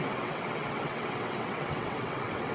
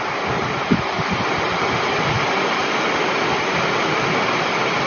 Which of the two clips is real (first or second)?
second